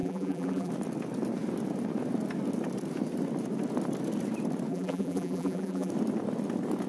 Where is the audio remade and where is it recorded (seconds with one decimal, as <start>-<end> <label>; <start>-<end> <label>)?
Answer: 0.0-0.7 remade; 0.7-4.7 recorded; 4.7-5.9 remade; 5.9-6.9 recorded